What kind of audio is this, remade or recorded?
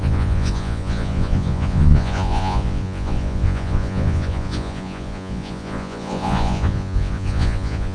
remade